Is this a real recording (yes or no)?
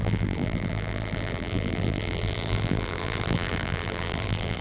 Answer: no